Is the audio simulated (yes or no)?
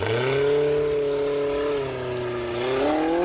no